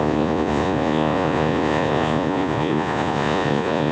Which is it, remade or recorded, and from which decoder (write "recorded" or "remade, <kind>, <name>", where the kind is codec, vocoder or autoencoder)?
remade, vocoder, Vocos